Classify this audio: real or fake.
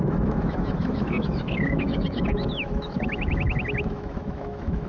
fake